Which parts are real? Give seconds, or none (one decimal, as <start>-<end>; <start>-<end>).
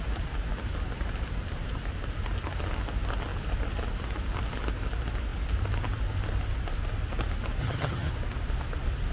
0.0-7.6; 8.1-9.1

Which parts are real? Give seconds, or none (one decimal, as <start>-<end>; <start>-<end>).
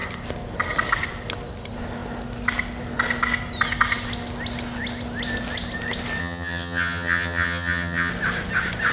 0.0-6.2; 8.1-8.9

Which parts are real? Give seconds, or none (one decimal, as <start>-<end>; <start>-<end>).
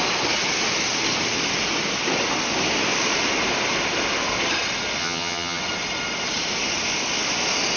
0.0-5.0; 5.6-7.8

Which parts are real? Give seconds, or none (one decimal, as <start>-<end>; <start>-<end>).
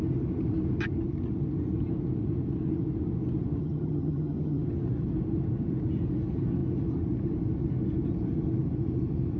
0.0-3.6; 4.6-9.4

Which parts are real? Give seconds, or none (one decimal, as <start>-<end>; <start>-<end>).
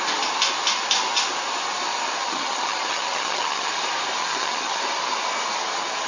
0.0-2.2; 3.7-4.2; 4.8-6.1